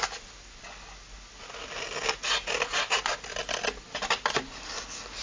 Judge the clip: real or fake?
real